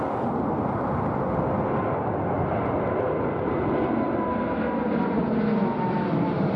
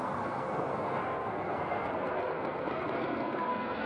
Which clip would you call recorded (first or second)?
first